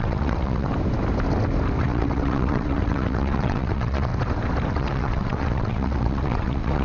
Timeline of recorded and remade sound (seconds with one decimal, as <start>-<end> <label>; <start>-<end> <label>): 0.0-0.7 remade; 0.7-1.8 recorded; 1.8-4.1 remade; 4.1-4.7 recorded; 4.7-6.8 remade